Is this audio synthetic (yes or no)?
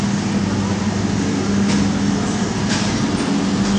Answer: no